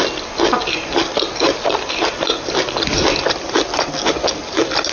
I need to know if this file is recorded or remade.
recorded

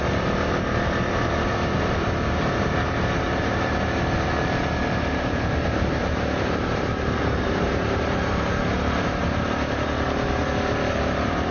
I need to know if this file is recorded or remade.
remade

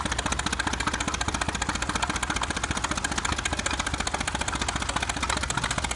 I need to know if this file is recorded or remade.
recorded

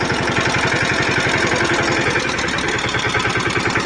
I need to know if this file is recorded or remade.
recorded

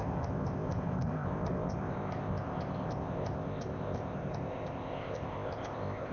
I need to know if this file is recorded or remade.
remade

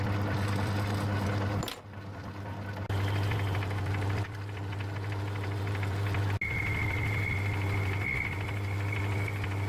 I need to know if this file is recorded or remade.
recorded